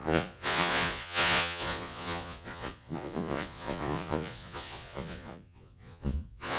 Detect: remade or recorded remade